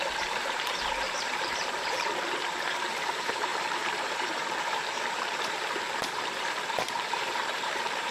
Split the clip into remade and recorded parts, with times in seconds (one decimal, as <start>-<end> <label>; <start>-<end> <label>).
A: 0.0-8.1 remade